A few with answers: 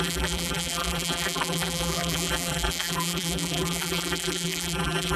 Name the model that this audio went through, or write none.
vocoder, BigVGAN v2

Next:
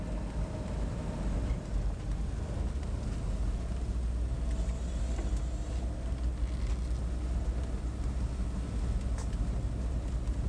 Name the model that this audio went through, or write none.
none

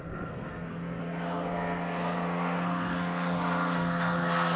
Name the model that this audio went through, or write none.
codec, SNAC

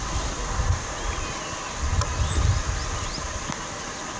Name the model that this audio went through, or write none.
none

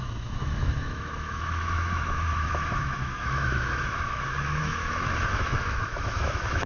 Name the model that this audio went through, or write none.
autoencoder, DAC-VAE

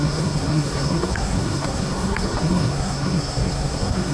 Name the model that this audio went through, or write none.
codec, SNAC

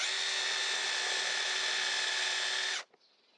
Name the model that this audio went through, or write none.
none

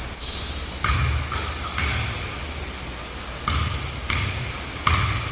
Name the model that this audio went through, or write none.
none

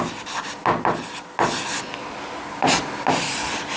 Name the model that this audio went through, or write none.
none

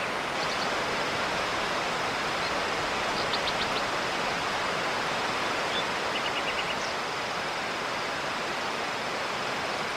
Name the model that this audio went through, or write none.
none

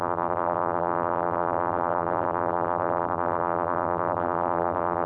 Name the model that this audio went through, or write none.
vocoder, BigVGAN v2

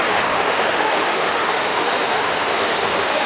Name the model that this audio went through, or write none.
autoencoder, DAC-VAE